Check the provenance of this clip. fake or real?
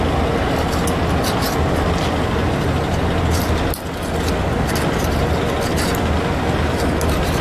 real